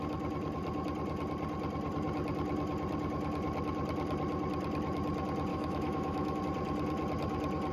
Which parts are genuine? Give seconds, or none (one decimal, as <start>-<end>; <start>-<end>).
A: 0.0-5.5; 6.4-7.7